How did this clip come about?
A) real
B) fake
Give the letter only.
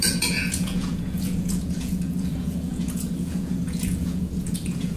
B